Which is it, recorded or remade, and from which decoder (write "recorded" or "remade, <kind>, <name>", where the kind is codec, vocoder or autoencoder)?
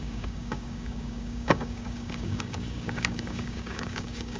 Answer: remade, codec, DAC